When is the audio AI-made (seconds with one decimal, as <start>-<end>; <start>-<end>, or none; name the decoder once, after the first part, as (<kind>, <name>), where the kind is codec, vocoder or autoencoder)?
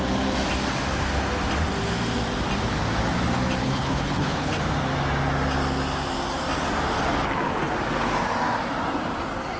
3.6-4.6 (codec, HILCodec)